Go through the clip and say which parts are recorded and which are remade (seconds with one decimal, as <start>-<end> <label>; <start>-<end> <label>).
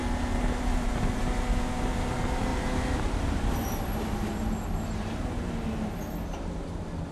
0.0-0.6 recorded; 0.6-2.5 remade; 2.5-7.1 recorded